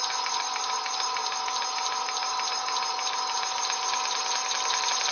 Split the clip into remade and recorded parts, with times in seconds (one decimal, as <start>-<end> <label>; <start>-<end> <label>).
0.0-5.1 recorded